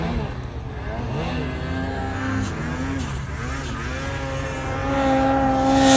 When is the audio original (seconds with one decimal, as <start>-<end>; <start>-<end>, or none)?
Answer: 0.0-1.9; 2.5-6.0